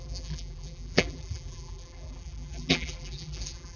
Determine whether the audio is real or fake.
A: fake